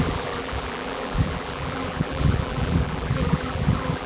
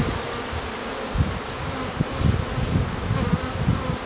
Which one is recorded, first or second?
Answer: second